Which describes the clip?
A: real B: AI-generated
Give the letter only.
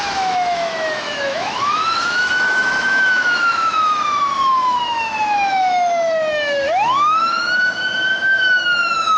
B